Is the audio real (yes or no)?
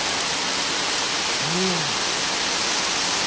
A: yes